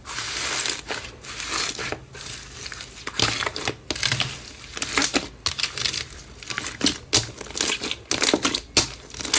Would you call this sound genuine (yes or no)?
yes